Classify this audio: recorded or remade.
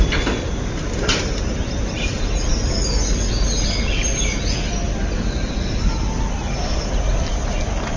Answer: recorded